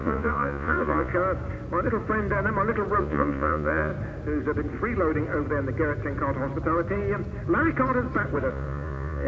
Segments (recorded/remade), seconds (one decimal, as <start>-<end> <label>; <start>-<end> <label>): 0.0-1.1 remade; 1.1-3.0 recorded; 3.0-3.9 remade; 3.9-8.5 recorded; 8.5-9.3 remade